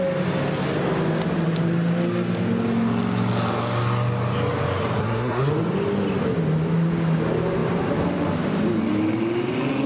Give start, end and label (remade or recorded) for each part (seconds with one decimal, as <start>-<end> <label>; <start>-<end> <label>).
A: 0.0-5.0 recorded; 5.0-5.5 remade; 5.5-9.9 recorded